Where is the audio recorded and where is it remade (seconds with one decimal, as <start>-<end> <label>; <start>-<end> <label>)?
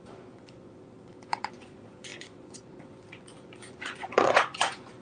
0.0-5.0 remade